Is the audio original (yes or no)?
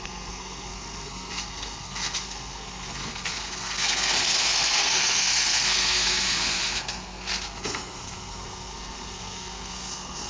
no